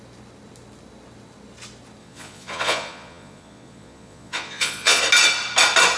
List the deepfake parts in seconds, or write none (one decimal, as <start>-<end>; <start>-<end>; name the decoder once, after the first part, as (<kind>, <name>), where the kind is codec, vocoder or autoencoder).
2.0-5.0 (vocoder, Vocos)